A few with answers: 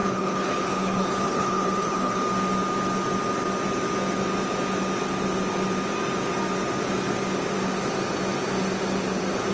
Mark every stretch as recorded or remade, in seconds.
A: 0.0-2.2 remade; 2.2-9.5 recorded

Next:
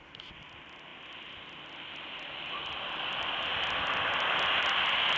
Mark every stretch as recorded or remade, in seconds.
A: 0.0-5.2 recorded

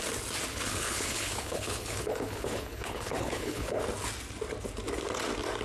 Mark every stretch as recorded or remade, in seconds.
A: 0.0-0.5 recorded; 0.5-3.8 remade; 3.8-5.6 recorded

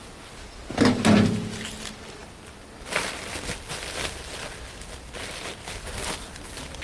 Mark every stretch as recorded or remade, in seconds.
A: 0.0-6.8 recorded

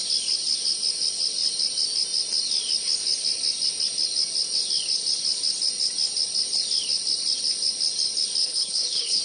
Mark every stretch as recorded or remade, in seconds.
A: 0.0-8.4 recorded; 8.4-9.2 remade